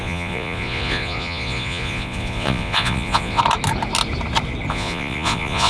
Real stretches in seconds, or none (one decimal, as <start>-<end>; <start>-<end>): 3.4-4.7